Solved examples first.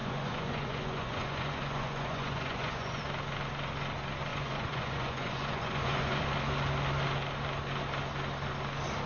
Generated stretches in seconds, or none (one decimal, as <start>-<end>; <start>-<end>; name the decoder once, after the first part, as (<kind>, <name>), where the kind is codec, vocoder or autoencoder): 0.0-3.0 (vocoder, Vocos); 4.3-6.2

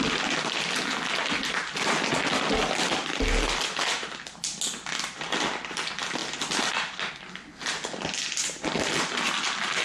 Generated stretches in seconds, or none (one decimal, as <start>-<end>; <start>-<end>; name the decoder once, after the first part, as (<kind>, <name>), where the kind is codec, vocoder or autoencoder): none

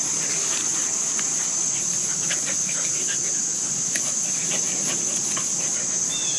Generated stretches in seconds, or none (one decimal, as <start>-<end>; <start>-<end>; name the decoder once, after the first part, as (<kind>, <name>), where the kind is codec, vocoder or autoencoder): none

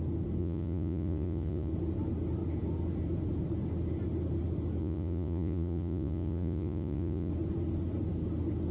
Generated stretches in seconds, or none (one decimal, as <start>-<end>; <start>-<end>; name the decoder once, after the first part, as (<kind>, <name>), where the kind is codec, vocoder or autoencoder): 0.4-1.7 (vocoder, Vocos); 4.8-7.3